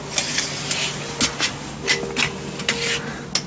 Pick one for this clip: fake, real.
real